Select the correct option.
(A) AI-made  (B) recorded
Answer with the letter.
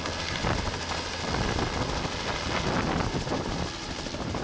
B